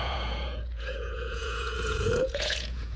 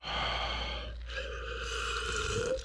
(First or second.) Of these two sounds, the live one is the second